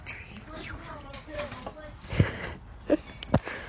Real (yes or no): no